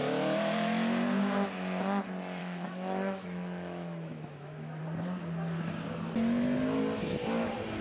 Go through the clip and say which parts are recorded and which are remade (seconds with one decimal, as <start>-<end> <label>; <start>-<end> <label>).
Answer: 0.0-2.4 recorded; 2.4-4.8 remade; 4.8-7.8 recorded